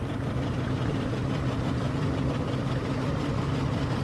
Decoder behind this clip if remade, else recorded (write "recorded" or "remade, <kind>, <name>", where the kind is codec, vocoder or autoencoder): remade, vocoder, BigVGAN v2